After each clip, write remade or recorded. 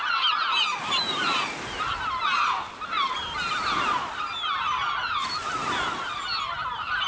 recorded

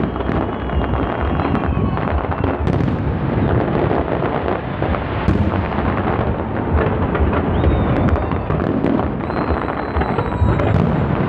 recorded